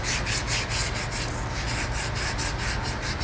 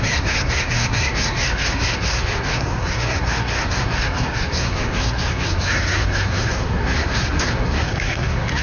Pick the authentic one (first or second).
first